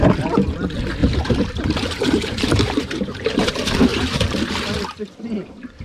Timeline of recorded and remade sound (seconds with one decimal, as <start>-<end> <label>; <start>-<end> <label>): 0.0-1.0 recorded; 1.0-3.5 remade; 3.5-3.9 recorded; 3.9-4.5 remade; 4.5-5.8 recorded